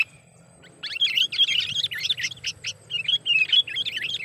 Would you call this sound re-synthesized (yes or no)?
no